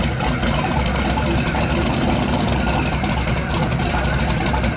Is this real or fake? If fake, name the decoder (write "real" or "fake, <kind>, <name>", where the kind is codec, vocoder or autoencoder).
real